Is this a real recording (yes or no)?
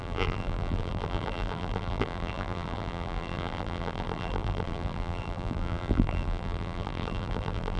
no